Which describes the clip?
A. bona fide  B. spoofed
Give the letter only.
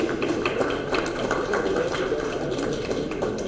A